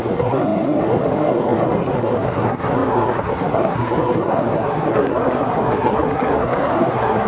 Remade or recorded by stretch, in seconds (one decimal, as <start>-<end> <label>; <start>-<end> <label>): 0.0-7.3 remade